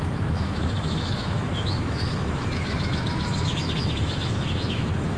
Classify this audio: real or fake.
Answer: fake